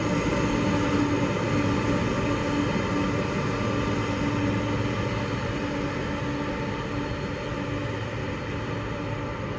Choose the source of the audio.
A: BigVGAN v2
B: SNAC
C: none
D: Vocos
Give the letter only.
C